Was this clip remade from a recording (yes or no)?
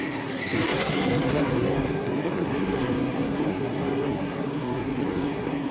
yes